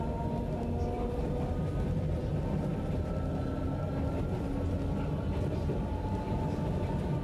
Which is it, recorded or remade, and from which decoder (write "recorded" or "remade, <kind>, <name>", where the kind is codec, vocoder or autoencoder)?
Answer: recorded